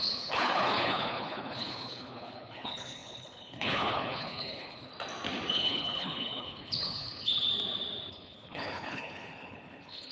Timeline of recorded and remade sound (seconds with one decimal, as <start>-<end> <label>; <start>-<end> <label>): 0.0-4.9 remade; 4.9-5.5 recorded; 5.5-7.5 remade; 7.5-8.1 recorded; 8.1-10.1 remade